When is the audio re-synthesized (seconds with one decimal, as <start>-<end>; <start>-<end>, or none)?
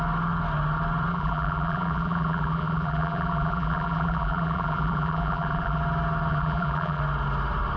1.1-5.8; 6.3-7.0